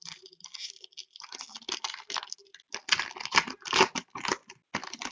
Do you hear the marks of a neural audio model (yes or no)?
no